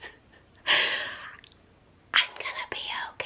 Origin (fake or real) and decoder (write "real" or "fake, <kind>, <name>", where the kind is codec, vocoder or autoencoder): real